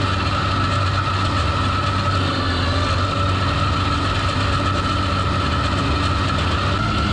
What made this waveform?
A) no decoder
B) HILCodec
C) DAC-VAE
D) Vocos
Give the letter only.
A